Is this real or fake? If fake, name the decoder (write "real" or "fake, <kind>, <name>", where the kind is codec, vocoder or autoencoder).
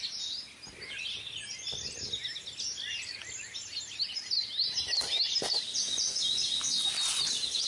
real